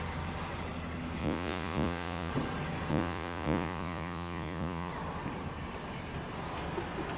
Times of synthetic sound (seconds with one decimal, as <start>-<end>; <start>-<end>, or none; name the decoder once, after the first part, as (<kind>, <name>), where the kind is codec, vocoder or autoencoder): 1.2-2.3 (vocoder, Vocos); 2.9-4.9